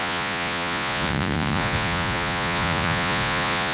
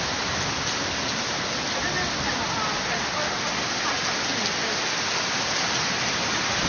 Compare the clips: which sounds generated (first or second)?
first